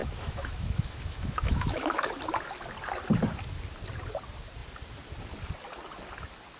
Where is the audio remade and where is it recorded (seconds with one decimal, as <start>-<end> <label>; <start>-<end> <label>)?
0.0-2.1 remade; 2.1-6.6 recorded